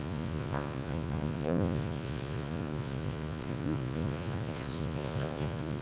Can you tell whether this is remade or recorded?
remade